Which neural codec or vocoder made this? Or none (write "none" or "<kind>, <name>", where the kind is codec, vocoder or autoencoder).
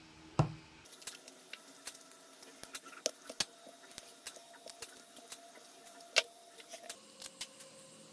none